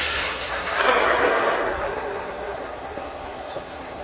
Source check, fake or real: fake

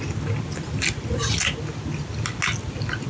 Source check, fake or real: real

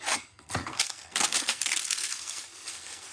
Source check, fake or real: fake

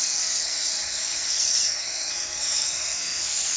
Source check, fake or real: fake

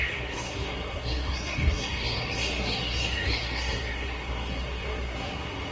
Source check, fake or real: fake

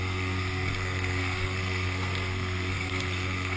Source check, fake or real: fake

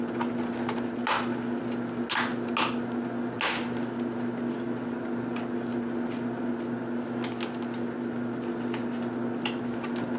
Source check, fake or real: real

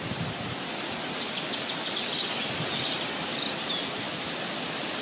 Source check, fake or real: real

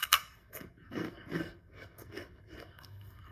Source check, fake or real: fake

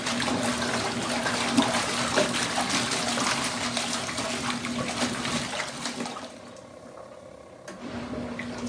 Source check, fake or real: real